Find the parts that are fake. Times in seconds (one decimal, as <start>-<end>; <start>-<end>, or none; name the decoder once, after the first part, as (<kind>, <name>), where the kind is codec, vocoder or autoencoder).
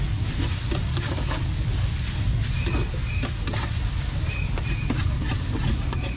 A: 0.9-2.2 (codec, DAC)